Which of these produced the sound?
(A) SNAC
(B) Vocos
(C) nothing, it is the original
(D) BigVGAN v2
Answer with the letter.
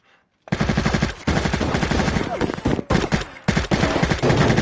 C